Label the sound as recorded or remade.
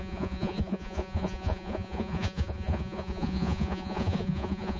remade